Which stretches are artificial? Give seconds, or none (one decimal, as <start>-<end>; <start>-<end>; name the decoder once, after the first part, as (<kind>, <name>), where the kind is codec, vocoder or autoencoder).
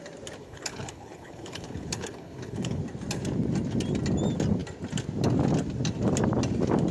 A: 0.4-2.8 (codec, HILCodec)